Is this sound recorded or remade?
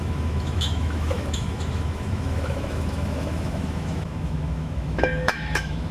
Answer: remade